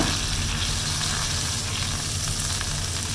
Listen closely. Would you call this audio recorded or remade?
recorded